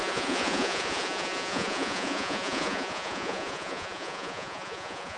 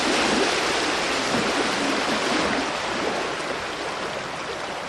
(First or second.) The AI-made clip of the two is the first